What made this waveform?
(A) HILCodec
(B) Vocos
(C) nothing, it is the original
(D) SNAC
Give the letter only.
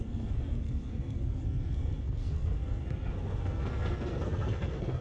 D